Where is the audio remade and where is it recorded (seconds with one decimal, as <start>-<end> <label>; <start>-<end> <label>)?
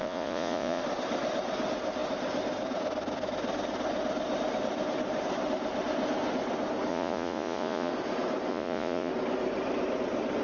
0.0-0.8 remade; 0.8-6.9 recorded; 6.9-7.9 remade; 7.9-8.5 recorded; 8.5-9.1 remade; 9.1-10.4 recorded